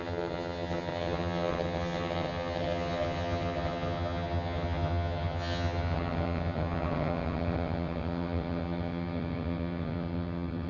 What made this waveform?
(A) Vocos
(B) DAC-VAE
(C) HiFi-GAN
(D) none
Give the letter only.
C